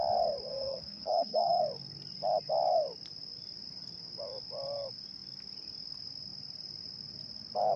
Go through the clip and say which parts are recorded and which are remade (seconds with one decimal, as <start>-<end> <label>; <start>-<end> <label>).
0.0-0.5 recorded; 0.5-1.6 remade; 1.6-7.8 recorded